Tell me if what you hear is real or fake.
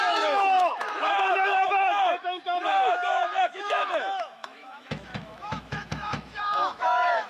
fake